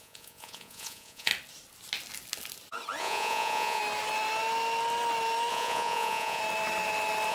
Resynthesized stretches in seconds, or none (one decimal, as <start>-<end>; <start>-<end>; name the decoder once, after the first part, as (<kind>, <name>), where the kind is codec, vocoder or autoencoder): 0.0-1.3 (vocoder, Vocos); 3.0-3.8; 5.5-6.4